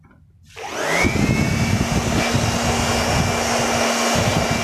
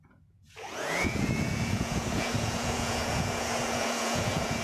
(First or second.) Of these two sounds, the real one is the first